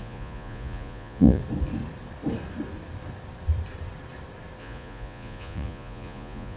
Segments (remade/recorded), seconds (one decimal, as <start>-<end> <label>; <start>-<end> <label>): 0.0-1.4 remade; 1.4-4.6 recorded; 4.6-6.6 remade